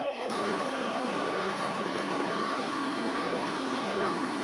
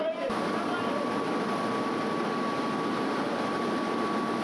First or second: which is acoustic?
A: second